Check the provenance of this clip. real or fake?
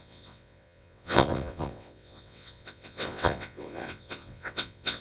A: fake